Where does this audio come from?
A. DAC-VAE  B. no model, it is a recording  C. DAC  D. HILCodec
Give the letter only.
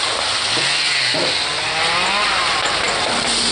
B